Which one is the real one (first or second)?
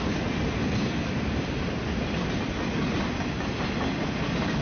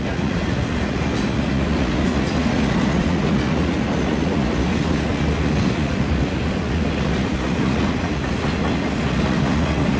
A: first